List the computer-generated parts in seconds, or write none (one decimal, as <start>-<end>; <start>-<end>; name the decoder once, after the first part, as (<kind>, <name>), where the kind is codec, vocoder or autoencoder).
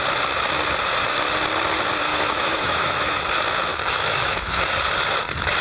2.1-3.2 (autoencoder, DAC-VAE); 3.7-4.6